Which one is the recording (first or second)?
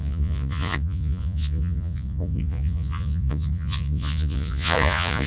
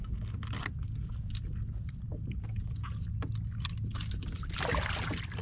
second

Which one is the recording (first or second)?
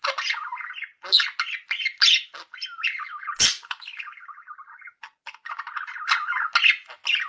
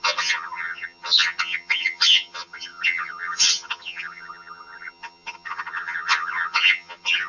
first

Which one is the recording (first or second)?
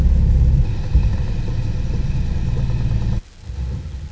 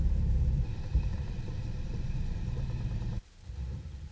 first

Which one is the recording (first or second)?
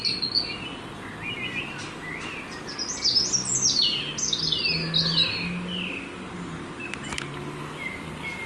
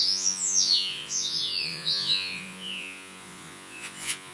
first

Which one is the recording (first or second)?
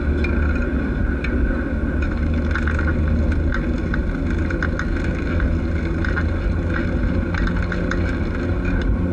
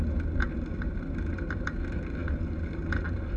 first